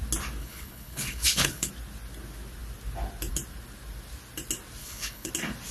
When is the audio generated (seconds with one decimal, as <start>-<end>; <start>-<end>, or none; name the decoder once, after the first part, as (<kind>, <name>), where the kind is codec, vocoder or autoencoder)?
0.4-1.7 (codec, HILCodec); 4.8-5.3